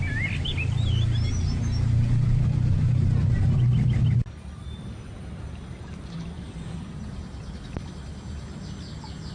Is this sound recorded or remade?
recorded